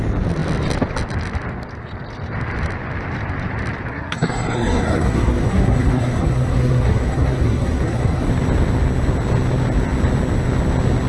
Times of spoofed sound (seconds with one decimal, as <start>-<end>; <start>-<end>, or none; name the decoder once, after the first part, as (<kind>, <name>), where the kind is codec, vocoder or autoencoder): 3.9-8.3 (codec, SNAC)